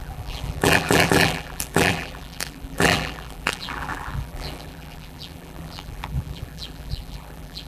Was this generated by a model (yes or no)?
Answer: yes